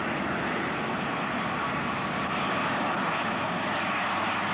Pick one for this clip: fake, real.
real